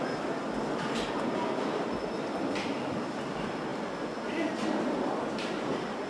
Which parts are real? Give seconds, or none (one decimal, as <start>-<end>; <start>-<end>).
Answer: 0.0-6.1